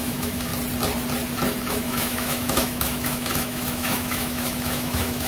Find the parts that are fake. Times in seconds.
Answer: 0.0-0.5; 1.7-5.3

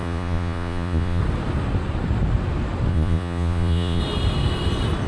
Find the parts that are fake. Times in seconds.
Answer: 0.0-1.2; 2.9-4.0